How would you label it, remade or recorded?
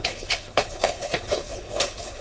remade